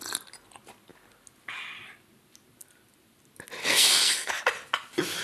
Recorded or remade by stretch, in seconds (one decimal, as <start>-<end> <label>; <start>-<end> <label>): 0.0-3.6 recorded; 3.6-4.4 remade; 4.4-5.2 recorded